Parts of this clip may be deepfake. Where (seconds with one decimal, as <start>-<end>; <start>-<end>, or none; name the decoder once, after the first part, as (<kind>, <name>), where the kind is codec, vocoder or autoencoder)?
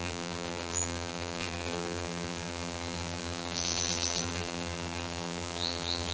0.0-6.1 (vocoder, BigVGAN v2)